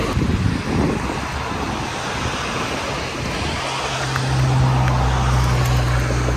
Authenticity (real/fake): real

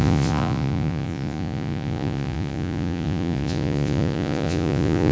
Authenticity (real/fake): fake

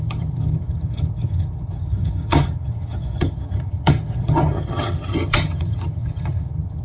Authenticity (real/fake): fake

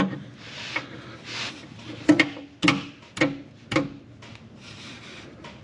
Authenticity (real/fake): real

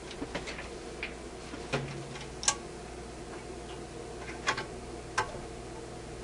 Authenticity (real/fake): real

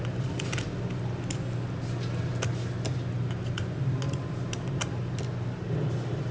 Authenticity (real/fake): real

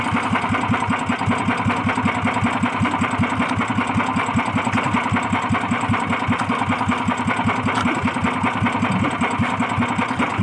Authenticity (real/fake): real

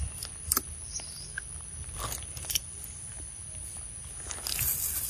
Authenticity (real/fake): real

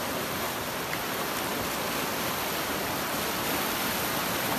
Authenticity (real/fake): real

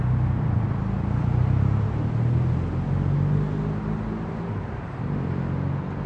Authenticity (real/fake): real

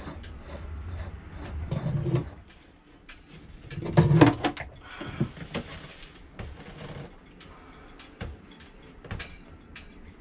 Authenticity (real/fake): real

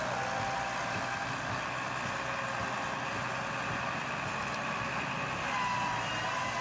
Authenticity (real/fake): real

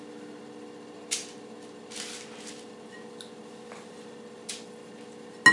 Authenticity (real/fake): real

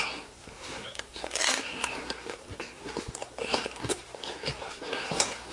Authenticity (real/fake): fake